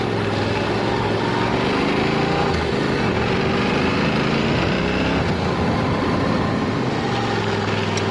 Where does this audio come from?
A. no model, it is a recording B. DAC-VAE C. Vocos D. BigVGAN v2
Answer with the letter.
A